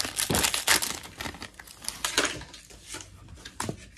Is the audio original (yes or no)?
yes